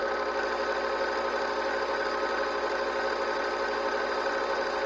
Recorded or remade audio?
recorded